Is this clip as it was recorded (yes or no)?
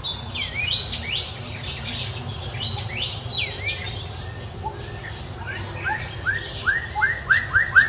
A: yes